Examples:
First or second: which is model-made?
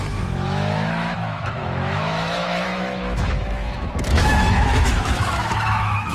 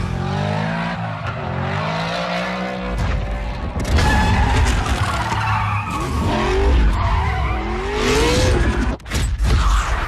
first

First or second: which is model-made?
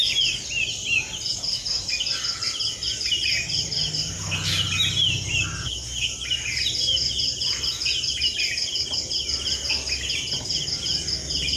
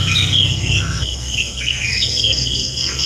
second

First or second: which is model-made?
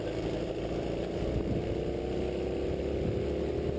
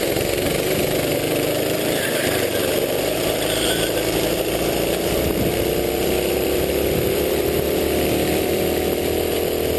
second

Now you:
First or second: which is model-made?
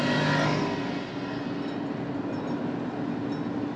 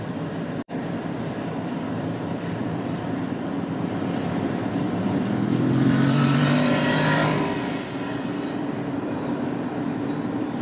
second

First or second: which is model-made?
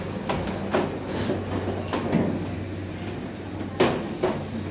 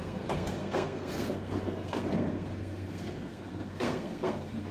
second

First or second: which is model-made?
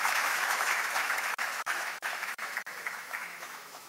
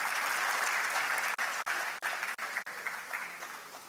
first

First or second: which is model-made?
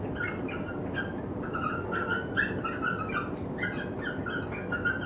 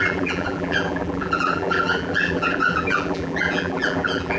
second